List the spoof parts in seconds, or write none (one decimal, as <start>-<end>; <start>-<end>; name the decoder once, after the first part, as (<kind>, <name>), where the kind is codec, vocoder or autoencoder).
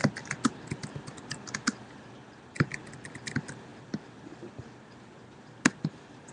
none